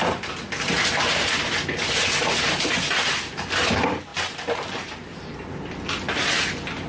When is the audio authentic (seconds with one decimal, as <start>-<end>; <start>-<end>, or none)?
0.0-6.9